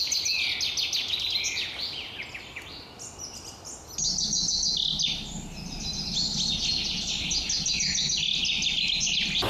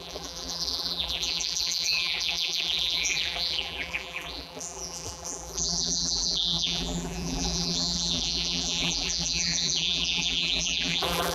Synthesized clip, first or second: second